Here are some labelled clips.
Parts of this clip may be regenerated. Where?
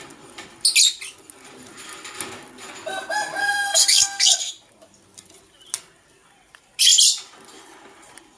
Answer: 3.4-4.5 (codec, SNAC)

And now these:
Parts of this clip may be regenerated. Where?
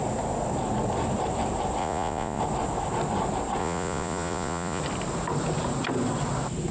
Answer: 1.8-2.4 (vocoder, Vocos); 3.6-4.8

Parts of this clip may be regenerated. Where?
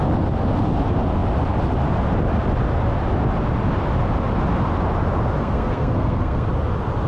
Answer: 5.4-6.5 (codec, SNAC)